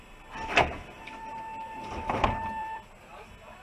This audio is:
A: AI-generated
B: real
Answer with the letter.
A